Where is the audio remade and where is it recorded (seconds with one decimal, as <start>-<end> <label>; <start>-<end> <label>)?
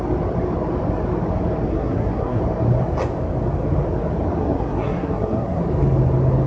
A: 0.0-1.7 recorded; 1.7-2.4 remade; 2.4-4.4 recorded; 4.4-5.6 remade; 5.6-6.5 recorded